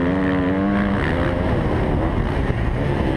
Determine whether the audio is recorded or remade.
recorded